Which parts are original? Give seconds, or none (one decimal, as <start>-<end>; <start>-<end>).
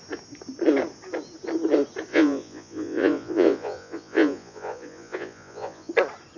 0.0-2.1; 5.9-6.4